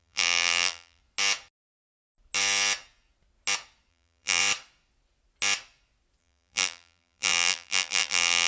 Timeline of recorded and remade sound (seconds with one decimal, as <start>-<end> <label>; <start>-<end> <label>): 0.0-1.0 remade; 1.0-3.9 recorded; 3.9-4.4 remade; 4.4-6.2 recorded; 6.2-8.5 remade